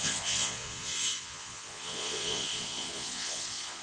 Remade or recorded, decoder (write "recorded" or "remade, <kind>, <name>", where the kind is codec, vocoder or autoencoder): remade, vocoder, Vocos